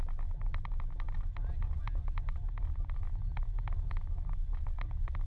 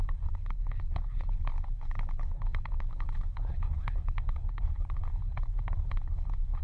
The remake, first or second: second